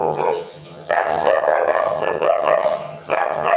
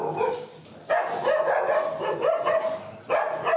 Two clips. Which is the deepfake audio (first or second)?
first